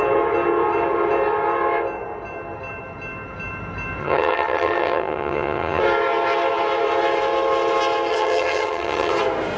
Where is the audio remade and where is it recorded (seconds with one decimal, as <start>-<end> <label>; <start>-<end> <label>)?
0.0-4.0 recorded; 4.0-5.8 remade; 5.8-8.1 recorded; 8.1-9.1 remade; 9.1-9.6 recorded